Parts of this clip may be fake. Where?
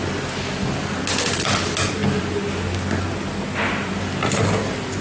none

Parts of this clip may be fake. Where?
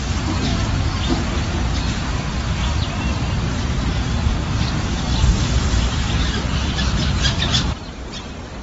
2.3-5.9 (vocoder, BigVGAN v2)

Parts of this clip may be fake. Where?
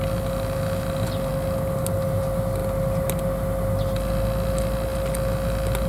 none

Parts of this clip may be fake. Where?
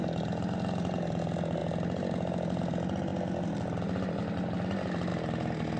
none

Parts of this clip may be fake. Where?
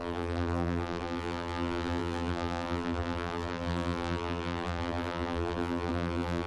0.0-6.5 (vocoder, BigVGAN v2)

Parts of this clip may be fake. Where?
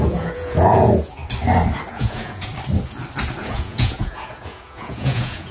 0.0-1.2 (vocoder, Vocos); 1.9-2.5; 3.4-5.5